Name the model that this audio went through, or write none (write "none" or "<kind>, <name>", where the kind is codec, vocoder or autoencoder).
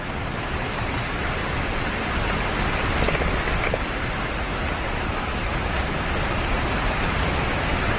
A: none